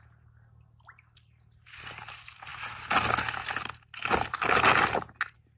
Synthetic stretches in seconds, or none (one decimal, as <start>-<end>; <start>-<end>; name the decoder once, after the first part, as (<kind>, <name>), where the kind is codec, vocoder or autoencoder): none